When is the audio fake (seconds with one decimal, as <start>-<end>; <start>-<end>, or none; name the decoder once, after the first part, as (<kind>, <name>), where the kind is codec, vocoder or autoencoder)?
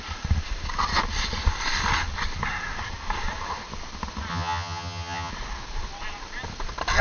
4.3-5.3 (vocoder, HiFi-GAN)